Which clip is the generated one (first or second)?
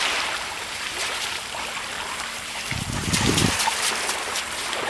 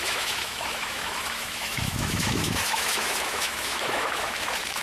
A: second